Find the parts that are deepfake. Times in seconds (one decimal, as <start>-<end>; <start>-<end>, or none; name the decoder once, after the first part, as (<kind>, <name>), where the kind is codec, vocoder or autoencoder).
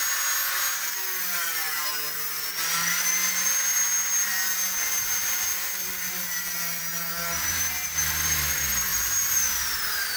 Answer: 4.3-6.8 (vocoder, BigVGAN v2); 8.9-10.2